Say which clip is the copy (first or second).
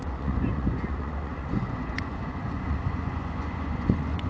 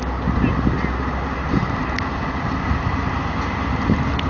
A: first